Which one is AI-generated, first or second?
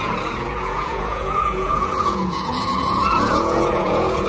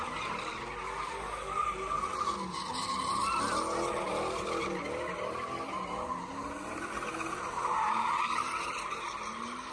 first